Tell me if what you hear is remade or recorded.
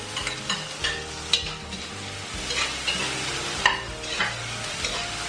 recorded